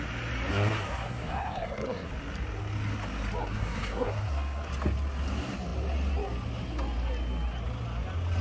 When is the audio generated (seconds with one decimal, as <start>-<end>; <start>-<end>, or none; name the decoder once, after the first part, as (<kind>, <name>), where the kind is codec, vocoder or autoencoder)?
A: 0.5-2.1 (codec, SNAC); 3.4-4.7